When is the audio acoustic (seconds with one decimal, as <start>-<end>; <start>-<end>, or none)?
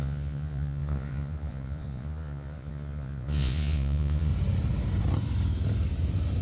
4.3-6.4